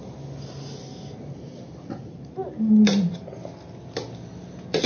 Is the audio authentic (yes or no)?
yes